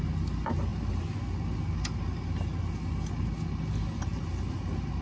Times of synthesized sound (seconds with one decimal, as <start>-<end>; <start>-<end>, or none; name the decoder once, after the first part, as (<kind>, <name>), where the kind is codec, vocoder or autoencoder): none